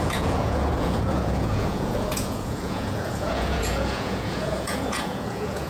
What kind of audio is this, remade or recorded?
remade